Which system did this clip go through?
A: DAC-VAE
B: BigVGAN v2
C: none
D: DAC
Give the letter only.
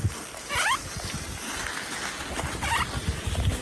C